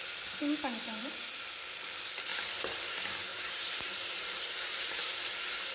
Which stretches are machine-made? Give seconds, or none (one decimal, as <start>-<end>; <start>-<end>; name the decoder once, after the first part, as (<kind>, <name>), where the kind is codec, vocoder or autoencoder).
0.4-1.1 (vocoder, BigVGAN v2); 2.3-2.9; 3.3-5.2